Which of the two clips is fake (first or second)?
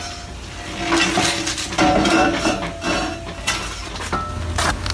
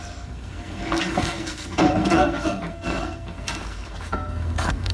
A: second